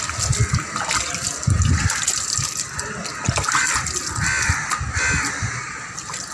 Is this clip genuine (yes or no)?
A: yes